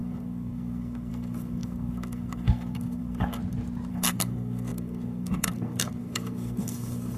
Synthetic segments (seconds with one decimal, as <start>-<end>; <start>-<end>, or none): 0.0-3.4; 3.9-7.2